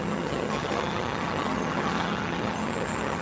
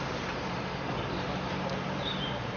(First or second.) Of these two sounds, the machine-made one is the first